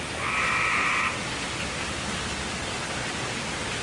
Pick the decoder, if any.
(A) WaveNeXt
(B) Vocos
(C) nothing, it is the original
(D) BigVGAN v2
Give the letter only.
C